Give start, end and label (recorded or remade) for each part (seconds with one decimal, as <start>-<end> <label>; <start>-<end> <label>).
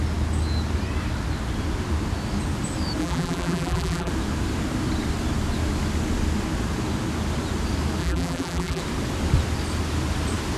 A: 0.0-3.0 recorded; 3.0-4.1 remade; 4.1-8.0 recorded; 8.0-8.8 remade; 8.8-10.6 recorded